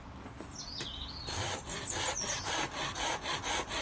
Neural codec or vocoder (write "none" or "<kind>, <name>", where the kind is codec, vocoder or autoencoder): none